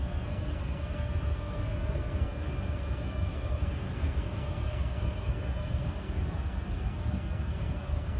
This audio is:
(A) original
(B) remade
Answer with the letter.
B